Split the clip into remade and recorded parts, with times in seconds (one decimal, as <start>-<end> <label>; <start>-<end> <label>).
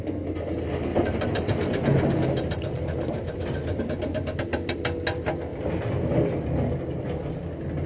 0.0-0.9 recorded; 0.9-3.8 remade; 3.8-7.9 recorded